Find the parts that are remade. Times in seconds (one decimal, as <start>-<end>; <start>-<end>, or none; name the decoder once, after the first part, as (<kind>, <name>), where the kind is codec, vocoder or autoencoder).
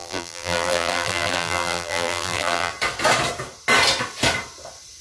0.0-2.7 (vocoder, BigVGAN v2)